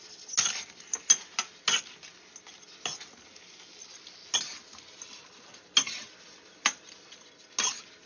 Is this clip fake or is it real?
real